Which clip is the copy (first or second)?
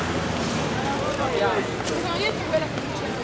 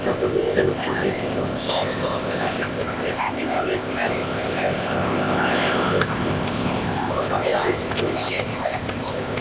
second